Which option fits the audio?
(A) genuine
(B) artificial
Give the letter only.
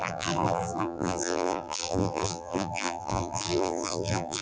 B